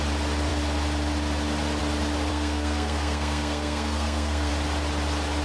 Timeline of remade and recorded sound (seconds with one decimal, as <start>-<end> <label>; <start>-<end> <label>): 0.0-2.3 recorded; 2.3-4.5 remade; 4.5-5.4 recorded

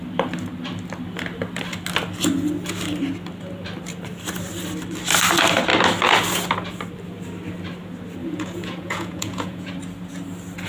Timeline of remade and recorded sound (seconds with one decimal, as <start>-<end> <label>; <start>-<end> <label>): 0.0-8.2 recorded; 8.2-9.7 remade; 9.7-10.7 recorded

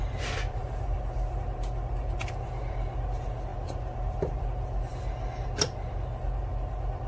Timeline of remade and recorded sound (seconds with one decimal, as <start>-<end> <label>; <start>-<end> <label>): 0.0-7.1 recorded

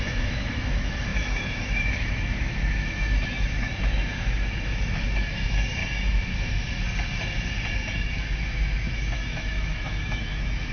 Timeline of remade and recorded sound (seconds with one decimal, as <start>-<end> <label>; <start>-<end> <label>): 0.0-5.8 remade; 5.8-8.0 recorded; 8.0-10.7 remade

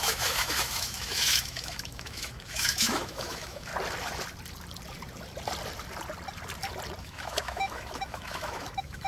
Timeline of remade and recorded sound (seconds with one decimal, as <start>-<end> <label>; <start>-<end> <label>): 0.0-3.7 remade; 3.7-7.0 recorded; 7.0-9.1 remade

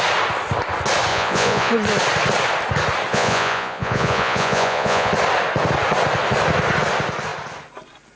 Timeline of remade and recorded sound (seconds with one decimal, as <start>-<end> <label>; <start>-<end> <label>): 0.0-1.1 recorded; 1.1-1.7 remade; 1.7-3.1 recorded; 3.1-5.1 remade; 5.1-8.2 recorded

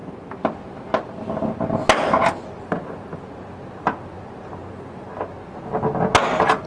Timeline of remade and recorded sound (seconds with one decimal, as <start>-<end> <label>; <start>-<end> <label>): 0.0-6.7 recorded